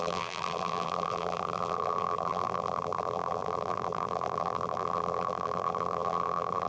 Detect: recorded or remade remade